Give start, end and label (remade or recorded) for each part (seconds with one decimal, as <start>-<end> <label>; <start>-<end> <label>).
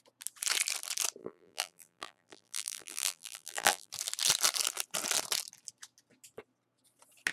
0.0-1.2 recorded; 1.2-3.9 remade; 3.9-7.3 recorded